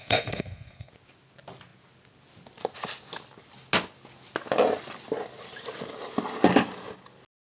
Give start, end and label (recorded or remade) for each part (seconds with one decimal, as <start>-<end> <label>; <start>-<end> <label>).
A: 0.0-0.9 remade; 0.9-7.5 recorded